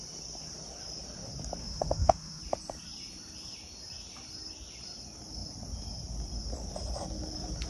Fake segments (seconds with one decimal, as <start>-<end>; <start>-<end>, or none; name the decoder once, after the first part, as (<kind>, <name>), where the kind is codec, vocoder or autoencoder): 1.6-2.4 (autoencoder, DAC-VAE)